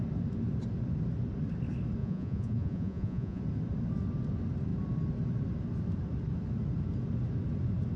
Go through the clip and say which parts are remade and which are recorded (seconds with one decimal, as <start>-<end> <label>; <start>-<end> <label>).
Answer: 0.0-2.0 recorded; 2.0-3.4 remade; 3.4-8.0 recorded